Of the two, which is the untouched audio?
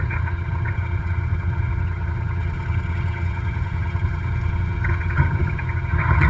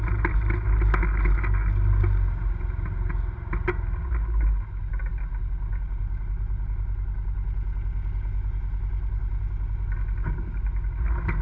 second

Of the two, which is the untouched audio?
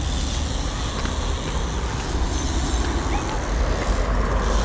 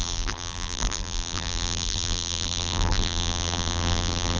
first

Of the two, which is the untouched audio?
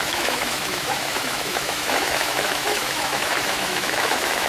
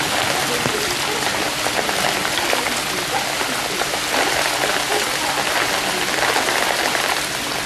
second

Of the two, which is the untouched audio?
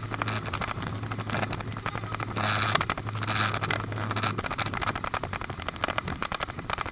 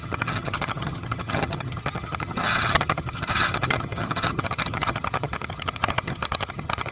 first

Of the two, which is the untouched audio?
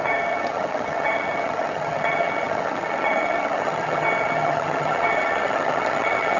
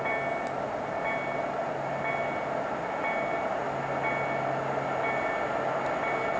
second